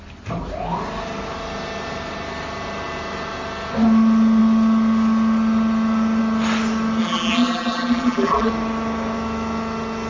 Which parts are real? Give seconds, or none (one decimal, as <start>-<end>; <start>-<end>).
0.0-7.0; 8.5-10.1